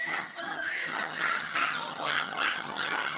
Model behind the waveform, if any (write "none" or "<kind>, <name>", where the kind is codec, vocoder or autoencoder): vocoder, HiFi-GAN